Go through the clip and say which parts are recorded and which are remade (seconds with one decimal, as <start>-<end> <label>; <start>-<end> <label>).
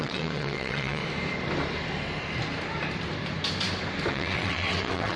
0.0-1.0 remade; 1.0-4.1 recorded; 4.1-5.2 remade